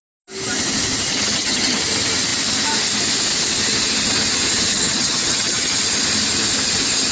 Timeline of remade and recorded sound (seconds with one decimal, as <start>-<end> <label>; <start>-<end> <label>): 0.0-1.1 recorded; 1.1-1.8 remade; 1.8-4.7 recorded; 4.7-5.8 remade; 5.8-7.1 recorded